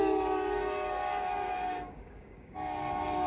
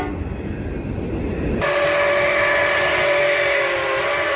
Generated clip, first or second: first